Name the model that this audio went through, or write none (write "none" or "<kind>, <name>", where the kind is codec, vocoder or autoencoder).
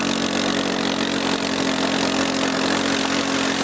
none